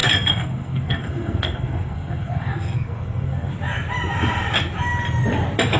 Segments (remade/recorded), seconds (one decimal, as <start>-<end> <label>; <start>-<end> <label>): 0.0-3.5 remade; 3.5-5.8 recorded